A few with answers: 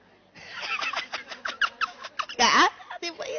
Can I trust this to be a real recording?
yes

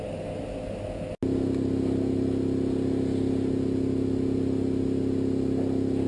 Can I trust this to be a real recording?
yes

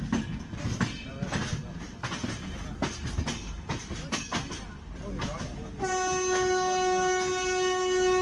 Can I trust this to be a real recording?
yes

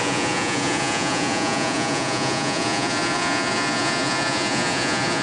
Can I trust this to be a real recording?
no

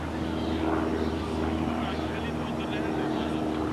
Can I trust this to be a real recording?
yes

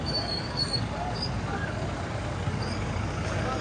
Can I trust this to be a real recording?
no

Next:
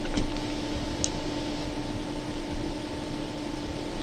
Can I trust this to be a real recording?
yes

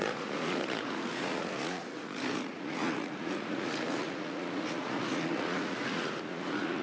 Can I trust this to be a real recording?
no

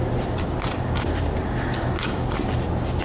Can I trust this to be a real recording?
yes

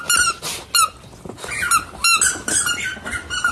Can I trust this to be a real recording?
yes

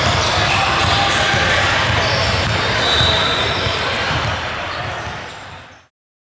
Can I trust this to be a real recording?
yes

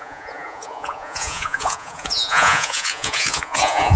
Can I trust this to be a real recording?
no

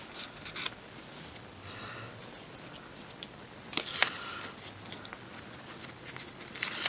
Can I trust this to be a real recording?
yes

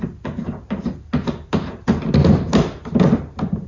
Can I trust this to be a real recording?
yes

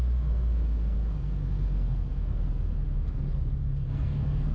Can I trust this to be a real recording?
no